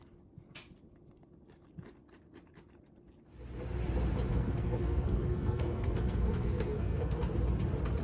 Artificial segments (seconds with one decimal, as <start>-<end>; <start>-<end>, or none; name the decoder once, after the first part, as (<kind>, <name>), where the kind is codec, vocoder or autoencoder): 4.3-7.2 (codec, SNAC)